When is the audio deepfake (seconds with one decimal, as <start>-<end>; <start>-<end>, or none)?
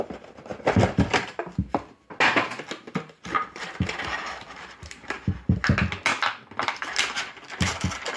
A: none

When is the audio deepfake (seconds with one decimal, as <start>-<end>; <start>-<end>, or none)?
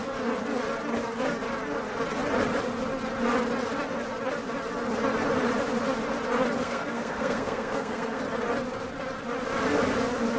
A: 6.6-8.2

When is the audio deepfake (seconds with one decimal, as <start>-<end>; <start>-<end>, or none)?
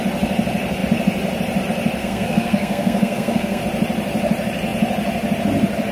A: 2.0-3.6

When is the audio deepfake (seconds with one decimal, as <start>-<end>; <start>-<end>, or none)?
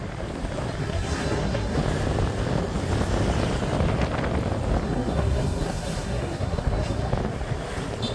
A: 0.8-1.8; 4.8-7.1